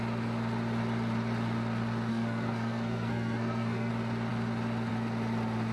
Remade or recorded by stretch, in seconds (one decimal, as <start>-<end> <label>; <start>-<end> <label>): 0.0-2.1 recorded; 2.1-3.9 remade; 3.9-5.7 recorded